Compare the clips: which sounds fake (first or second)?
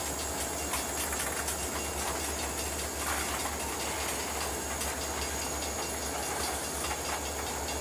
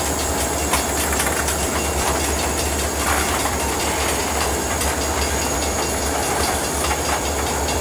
second